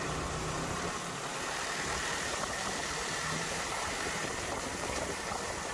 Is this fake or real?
fake